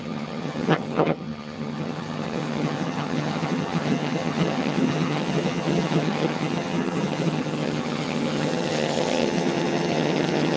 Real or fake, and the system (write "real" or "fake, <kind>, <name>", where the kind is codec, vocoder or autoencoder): fake, vocoder, HiFi-GAN